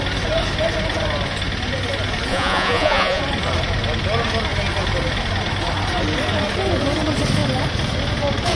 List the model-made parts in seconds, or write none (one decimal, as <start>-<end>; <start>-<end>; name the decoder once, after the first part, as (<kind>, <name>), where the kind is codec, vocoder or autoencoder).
2.3-3.2 (vocoder, Vocos)